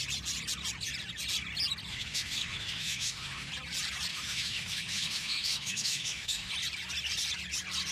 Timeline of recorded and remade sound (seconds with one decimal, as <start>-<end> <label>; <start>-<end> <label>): 0.0-1.9 recorded; 1.9-3.5 remade; 3.5-4.1 recorded; 4.1-6.5 remade; 6.5-7.9 recorded